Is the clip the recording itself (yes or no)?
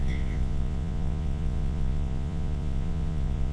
no